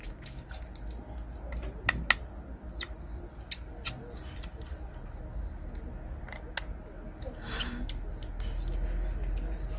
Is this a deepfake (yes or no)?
no